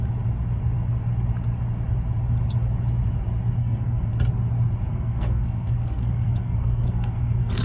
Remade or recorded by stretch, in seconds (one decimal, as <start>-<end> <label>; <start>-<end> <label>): 0.0-3.6 recorded; 3.6-4.1 remade; 4.1-4.9 recorded; 4.9-7.6 remade